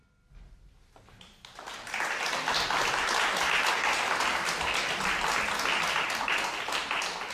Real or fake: real